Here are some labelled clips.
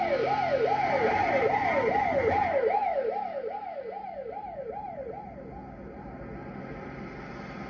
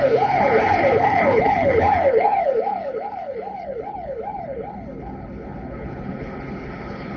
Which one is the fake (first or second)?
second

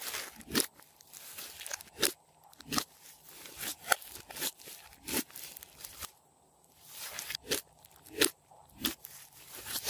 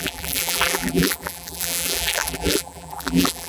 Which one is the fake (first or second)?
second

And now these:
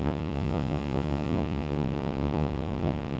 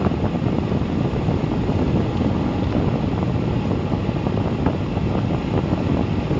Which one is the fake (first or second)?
first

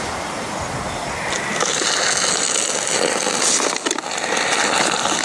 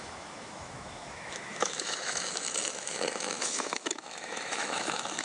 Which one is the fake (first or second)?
second